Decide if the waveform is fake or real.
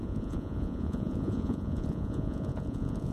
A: fake